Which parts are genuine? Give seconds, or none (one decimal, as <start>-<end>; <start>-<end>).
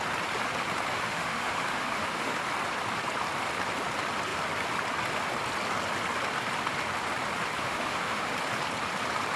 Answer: 0.0-0.9; 2.4-7.6; 8.3-9.4